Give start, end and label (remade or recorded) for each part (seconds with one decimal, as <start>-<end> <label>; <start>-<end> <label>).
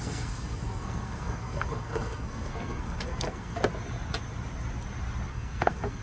0.0-3.6 remade; 3.6-5.3 recorded; 5.3-6.0 remade